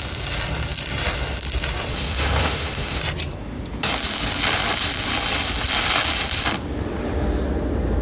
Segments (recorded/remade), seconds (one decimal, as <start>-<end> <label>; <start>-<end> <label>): 0.0-1.9 recorded; 1.9-3.0 remade; 3.0-8.0 recorded